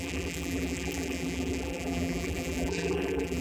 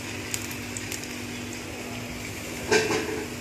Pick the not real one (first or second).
first